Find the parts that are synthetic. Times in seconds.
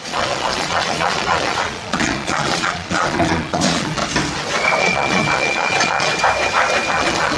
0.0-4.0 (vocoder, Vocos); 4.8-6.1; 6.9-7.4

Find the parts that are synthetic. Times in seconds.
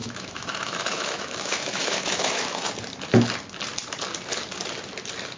0.0-2.7 (autoencoder, DAC-VAE)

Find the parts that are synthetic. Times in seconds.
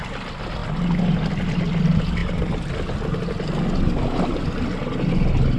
none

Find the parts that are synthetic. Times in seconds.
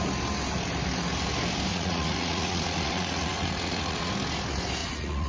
1.7-4.1 (vocoder, Vocos); 4.8-5.3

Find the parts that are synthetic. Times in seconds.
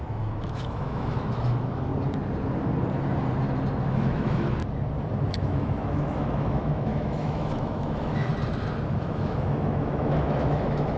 0.0-1.9 (autoencoder, DAC-VAE); 3.8-4.6; 5.3-8.3; 8.9-11.0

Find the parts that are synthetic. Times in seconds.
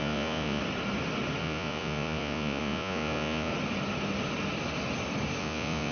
0.0-0.6 (vocoder, Vocos); 1.4-3.5; 5.4-5.9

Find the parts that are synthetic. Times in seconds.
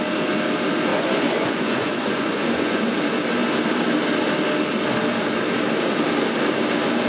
0.9-2.8 (vocoder, Vocos)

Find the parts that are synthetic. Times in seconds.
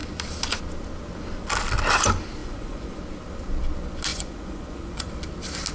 2.4-3.0 (vocoder, Vocos); 4.1-5.1